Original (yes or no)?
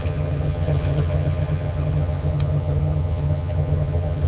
no